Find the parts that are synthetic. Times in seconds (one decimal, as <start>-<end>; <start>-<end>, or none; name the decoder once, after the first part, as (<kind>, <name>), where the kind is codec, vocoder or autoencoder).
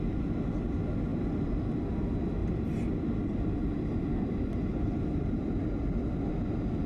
1.1-2.0 (vocoder, BigVGAN v2); 2.4-6.3